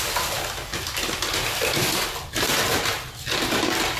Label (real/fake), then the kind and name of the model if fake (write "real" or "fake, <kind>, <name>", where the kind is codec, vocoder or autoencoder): real